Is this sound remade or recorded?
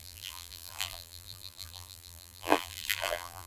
remade